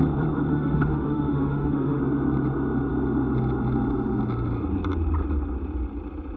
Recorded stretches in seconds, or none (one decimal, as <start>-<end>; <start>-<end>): 0.0-0.5; 2.0-6.4